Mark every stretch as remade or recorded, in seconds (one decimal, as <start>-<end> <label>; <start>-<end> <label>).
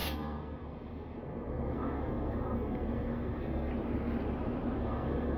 0.0-3.7 remade; 3.7-4.8 recorded; 4.8-5.4 remade